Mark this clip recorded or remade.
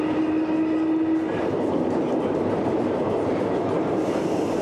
recorded